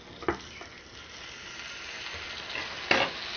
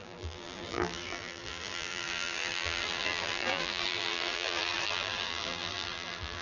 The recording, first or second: first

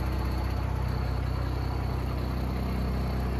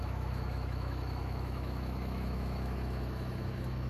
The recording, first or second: first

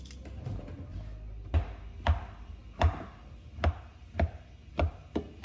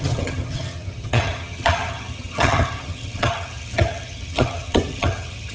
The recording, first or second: first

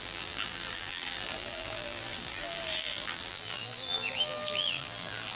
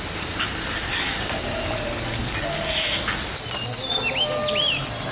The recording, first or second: second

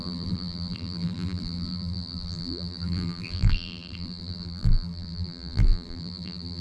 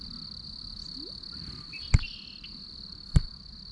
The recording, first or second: second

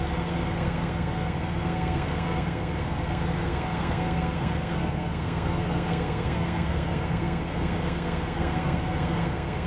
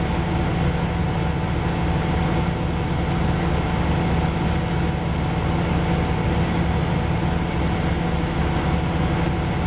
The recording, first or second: second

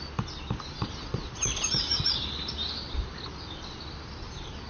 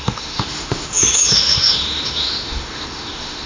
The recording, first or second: first